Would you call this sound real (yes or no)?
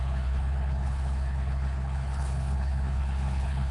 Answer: no